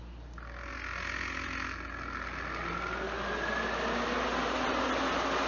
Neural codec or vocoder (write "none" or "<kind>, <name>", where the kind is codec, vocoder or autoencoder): none